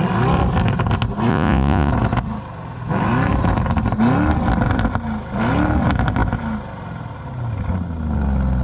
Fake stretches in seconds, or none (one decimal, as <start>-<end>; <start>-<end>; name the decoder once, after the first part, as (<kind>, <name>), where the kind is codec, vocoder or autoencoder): 1.3-1.9 (vocoder, Vocos)